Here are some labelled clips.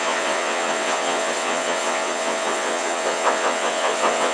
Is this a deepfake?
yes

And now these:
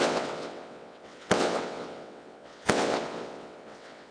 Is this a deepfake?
yes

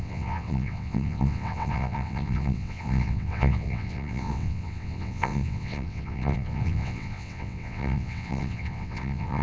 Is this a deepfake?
yes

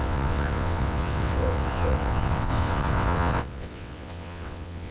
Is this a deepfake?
yes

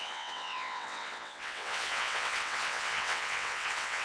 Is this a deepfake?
yes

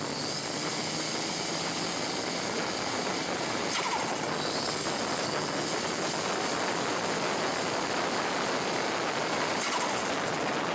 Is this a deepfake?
no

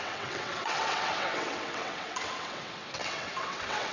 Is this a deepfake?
yes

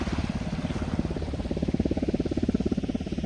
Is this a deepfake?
no